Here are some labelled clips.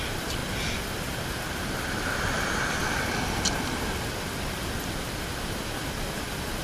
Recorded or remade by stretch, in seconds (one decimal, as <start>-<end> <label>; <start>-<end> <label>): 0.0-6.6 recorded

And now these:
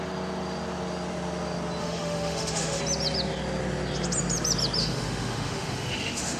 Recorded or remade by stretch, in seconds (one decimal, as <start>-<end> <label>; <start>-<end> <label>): 0.0-1.8 recorded; 1.8-2.8 remade; 2.8-4.8 recorded; 4.8-6.4 remade

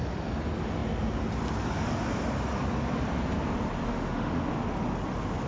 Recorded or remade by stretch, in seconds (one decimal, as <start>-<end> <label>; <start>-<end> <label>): 0.0-3.9 recorded; 3.9-4.5 remade; 4.5-5.5 recorded